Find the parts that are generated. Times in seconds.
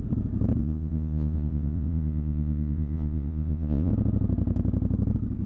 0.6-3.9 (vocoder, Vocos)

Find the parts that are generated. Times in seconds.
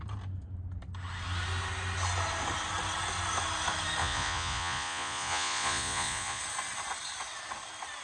4.0-6.4 (vocoder, Vocos)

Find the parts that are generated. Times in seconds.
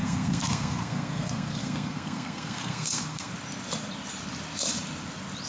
0.0-3.3 (codec, SNAC)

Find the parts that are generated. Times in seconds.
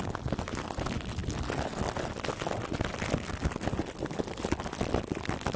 none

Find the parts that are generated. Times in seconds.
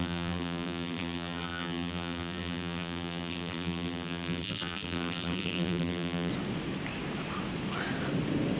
0.0-6.3 (vocoder, BigVGAN v2)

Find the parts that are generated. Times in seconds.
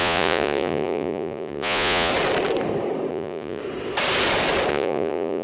0.0-2.1 (vocoder, Vocos); 3.1-3.6; 4.7-5.4